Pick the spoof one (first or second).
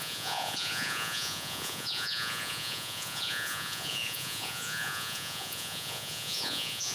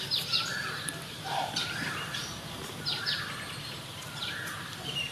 first